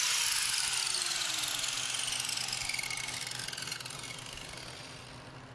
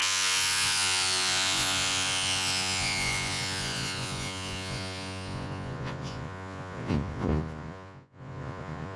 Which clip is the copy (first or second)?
second